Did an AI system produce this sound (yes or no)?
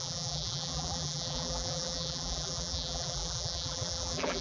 yes